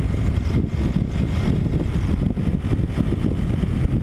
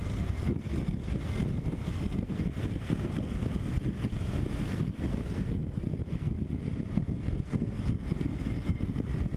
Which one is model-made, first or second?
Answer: second